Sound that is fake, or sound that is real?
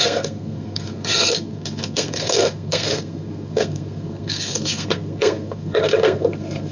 fake